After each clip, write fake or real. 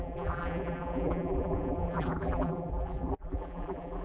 fake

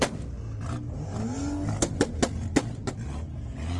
real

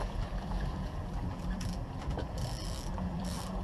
fake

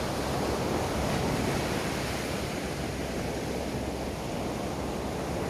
real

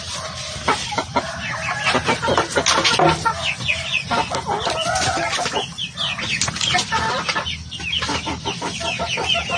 real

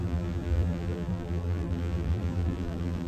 fake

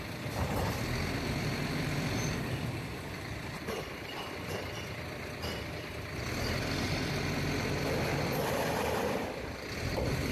fake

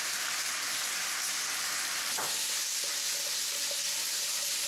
fake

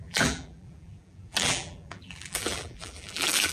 fake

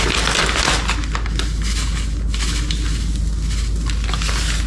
real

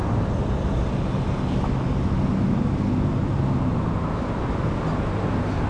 real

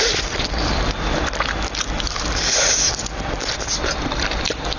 fake